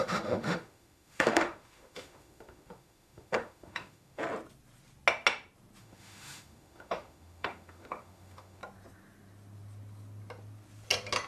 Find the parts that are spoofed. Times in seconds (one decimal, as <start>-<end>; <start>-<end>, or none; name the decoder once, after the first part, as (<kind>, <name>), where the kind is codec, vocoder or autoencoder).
0.0-4.2 (autoencoder, DAC-VAE); 5.8-8.6